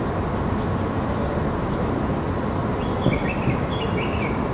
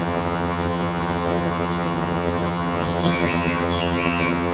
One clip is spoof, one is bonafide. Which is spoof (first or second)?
second